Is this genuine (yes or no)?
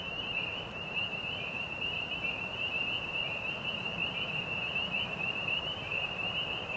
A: no